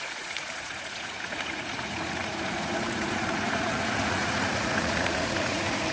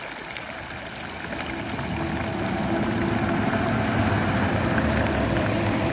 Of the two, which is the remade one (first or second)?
first